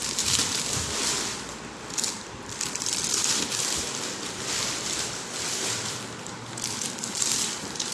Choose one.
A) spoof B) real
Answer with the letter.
A